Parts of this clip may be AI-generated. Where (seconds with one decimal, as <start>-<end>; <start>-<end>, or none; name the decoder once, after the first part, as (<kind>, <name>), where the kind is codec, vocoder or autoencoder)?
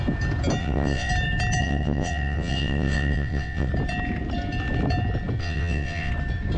0.6-1.1 (vocoder, WaveNeXt); 1.6-3.7; 5.4-6.1